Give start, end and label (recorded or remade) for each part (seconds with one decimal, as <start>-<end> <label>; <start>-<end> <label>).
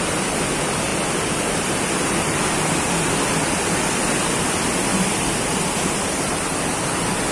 0.0-7.3 recorded